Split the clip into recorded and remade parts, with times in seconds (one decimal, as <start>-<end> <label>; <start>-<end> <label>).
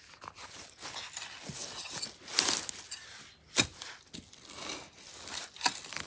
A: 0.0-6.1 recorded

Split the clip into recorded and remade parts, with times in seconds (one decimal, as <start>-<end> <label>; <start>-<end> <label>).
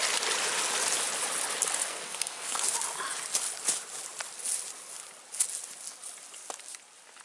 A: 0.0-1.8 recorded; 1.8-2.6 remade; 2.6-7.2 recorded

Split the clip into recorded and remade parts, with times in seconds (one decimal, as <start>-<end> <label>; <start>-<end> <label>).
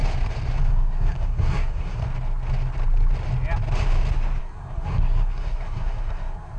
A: 0.0-0.7 recorded; 0.7-2.0 remade; 2.0-4.4 recorded; 4.4-6.6 remade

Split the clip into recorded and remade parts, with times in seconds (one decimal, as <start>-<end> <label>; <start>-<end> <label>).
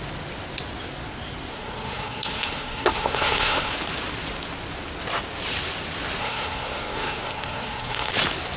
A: 0.0-1.5 recorded; 1.5-3.7 remade; 3.7-6.2 recorded; 6.2-8.1 remade; 8.1-8.6 recorded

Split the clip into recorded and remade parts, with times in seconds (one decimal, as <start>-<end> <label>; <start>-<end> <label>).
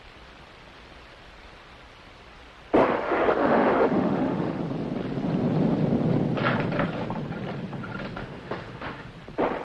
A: 0.0-2.8 recorded; 2.8-4.6 remade; 4.6-8.2 recorded; 8.2-9.1 remade; 9.1-9.6 recorded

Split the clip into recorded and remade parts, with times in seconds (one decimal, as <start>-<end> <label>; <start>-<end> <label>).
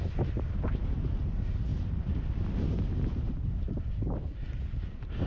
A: 0.0-5.3 recorded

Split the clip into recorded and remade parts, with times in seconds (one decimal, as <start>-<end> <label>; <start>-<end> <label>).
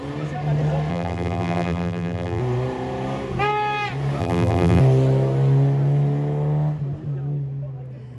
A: 0.0-0.9 recorded; 0.9-2.4 remade; 2.4-4.2 recorded; 4.2-4.8 remade; 4.8-8.2 recorded